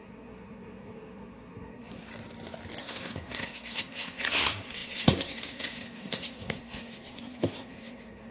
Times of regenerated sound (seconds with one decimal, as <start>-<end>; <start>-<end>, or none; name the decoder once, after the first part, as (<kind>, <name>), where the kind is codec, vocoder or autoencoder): 0.0-2.1 (codec, SNAC); 2.8-8.3